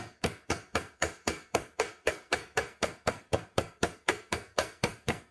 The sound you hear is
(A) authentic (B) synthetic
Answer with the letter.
B